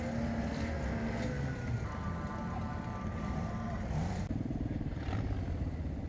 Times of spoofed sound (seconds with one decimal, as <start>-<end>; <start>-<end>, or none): 1.7-5.0

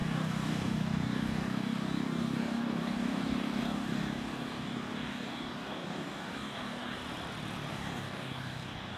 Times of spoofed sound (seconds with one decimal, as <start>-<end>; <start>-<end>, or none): 0.0-7.0; 7.7-9.0

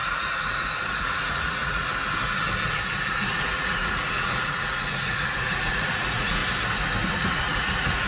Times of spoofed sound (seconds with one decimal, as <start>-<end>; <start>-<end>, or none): 0.0-1.9; 3.1-6.4; 7.1-8.1

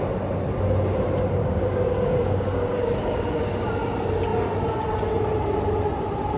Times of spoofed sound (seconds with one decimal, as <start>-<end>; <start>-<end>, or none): 1.4-3.7

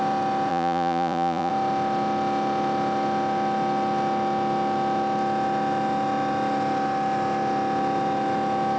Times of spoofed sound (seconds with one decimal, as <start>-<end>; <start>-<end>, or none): 0.5-1.5

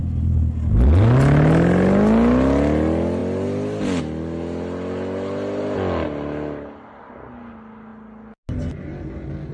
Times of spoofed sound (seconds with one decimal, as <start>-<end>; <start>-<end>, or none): none

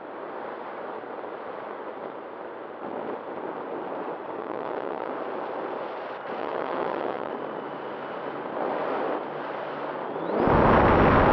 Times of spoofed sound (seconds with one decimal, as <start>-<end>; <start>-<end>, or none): 4.4-5.1; 6.4-7.3

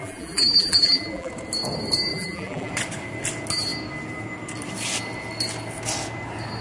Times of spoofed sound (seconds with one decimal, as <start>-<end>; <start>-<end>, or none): 0.0-1.3; 2.1-2.7